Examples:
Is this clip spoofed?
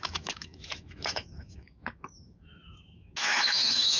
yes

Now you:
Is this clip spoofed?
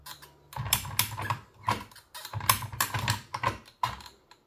no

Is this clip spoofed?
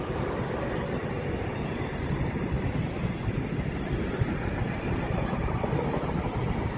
no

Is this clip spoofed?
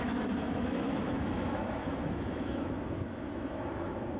yes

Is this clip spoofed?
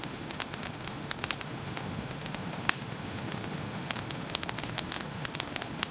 yes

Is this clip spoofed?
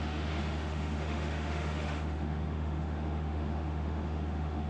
yes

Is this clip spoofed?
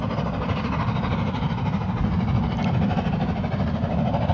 no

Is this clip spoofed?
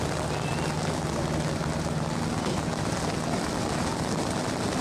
no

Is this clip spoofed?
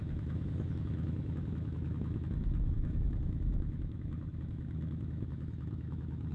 yes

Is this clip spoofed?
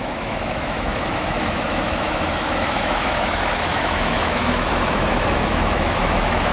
yes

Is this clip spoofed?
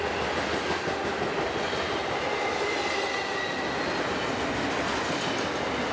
no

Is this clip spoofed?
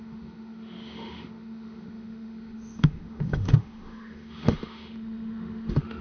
yes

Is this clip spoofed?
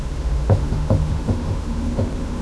yes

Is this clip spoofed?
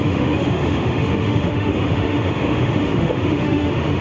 yes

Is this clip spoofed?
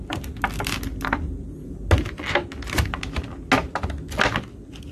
no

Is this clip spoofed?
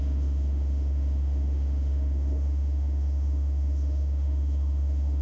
yes